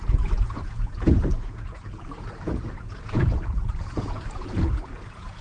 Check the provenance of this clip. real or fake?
fake